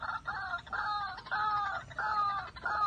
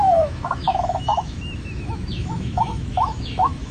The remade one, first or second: second